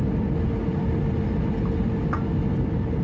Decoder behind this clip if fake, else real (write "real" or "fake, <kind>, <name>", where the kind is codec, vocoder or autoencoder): real